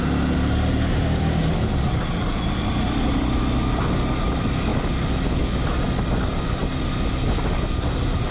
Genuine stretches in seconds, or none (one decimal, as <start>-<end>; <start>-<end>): 0.0-8.3